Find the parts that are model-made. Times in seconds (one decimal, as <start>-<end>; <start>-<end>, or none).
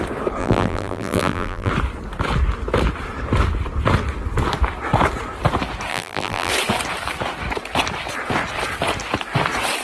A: 0.4-1.7; 5.9-6.5